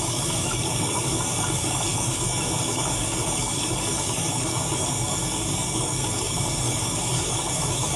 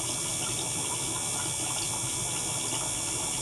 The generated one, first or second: first